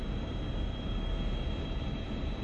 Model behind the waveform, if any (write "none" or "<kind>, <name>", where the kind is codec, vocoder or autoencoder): vocoder, BigVGAN v2